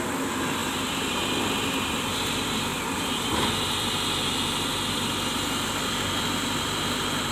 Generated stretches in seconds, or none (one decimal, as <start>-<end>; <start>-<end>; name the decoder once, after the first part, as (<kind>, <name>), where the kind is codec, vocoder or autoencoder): 0.6-1.1 (vocoder, BigVGAN v2); 2.7-7.3